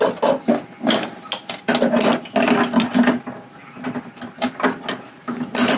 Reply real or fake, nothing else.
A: real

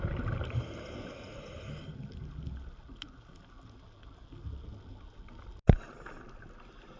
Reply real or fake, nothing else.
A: real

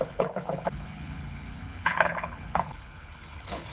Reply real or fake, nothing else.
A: fake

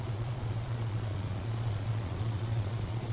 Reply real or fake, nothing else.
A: fake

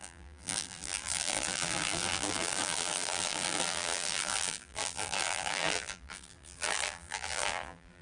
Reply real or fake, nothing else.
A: fake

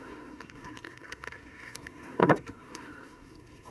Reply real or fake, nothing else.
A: fake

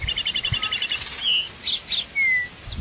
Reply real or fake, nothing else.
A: real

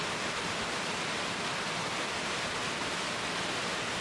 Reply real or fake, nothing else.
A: real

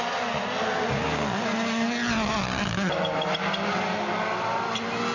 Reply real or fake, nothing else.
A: real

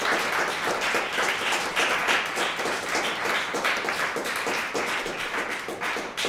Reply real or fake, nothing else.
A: real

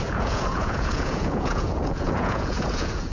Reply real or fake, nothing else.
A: fake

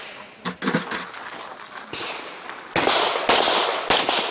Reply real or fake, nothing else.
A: real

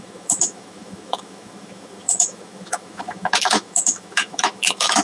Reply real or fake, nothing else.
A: fake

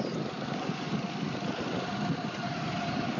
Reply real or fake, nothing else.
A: real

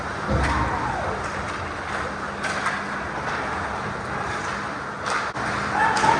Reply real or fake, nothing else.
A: real